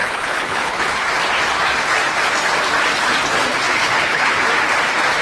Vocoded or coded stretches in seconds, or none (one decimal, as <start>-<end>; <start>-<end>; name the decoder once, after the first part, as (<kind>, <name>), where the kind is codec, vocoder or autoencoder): 0.0-1.0 (codec, HILCodec); 3.7-4.5